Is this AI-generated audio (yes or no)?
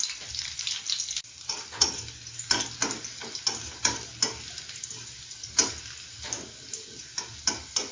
no